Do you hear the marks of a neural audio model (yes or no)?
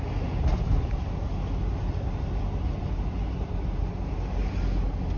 no